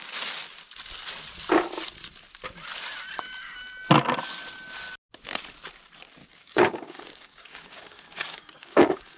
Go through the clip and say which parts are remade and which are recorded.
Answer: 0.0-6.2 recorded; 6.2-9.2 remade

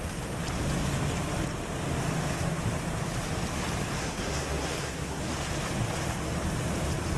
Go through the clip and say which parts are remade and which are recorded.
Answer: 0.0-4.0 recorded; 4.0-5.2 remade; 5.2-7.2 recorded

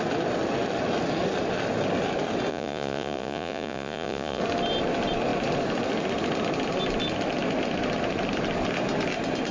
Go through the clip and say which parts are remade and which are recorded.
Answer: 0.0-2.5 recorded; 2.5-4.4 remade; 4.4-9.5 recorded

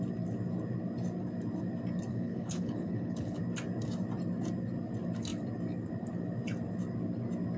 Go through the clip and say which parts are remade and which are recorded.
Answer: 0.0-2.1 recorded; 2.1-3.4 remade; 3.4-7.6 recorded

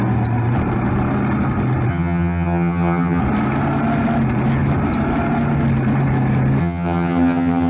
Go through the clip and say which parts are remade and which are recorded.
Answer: 0.0-1.9 recorded; 1.9-3.2 remade; 3.2-6.6 recorded; 6.6-7.7 remade

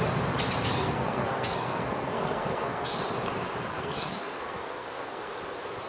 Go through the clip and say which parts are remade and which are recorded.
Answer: 0.0-0.6 recorded; 0.6-3.0 remade; 3.0-3.7 recorded; 3.7-5.3 remade; 5.3-5.9 recorded

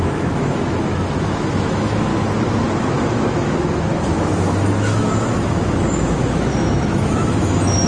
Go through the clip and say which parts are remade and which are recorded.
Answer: 0.0-2.1 remade; 2.1-2.8 recorded; 2.8-7.9 remade

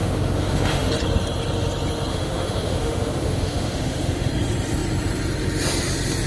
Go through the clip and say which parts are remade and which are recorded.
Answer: 0.0-0.9 remade; 0.9-2.1 recorded; 2.1-4.3 remade; 4.3-6.3 recorded